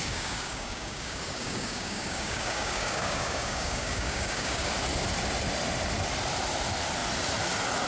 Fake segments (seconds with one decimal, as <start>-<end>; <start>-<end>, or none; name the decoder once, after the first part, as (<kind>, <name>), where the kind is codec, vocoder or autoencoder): 0.0-4.7 (codec, DAC)